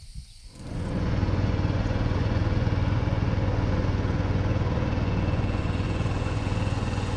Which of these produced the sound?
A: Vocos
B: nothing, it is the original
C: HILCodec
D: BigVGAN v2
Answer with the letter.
A